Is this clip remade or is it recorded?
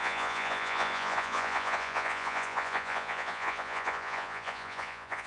remade